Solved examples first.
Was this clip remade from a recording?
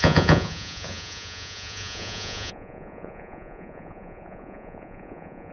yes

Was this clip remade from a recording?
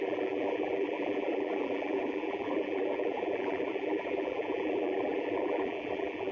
yes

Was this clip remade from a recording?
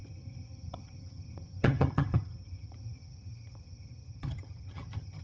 yes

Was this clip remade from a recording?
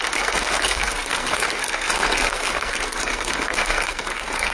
yes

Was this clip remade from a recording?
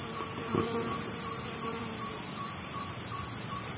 no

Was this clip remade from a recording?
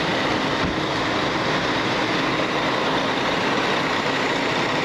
no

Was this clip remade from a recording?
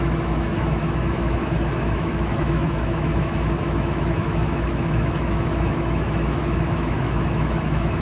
yes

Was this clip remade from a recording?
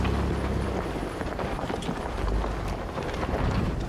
no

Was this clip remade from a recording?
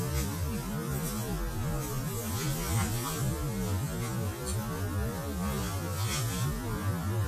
no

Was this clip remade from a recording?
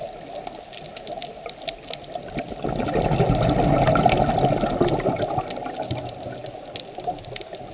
no